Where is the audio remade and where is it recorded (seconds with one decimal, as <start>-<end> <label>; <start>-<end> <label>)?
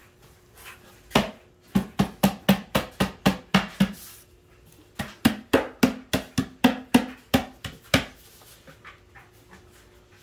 0.0-10.2 recorded